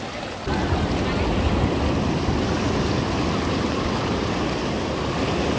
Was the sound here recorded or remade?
recorded